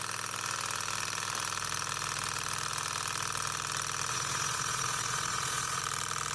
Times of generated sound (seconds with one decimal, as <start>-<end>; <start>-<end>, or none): 4.1-5.8